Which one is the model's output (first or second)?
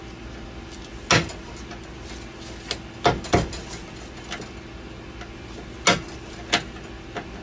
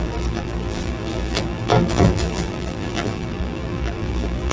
second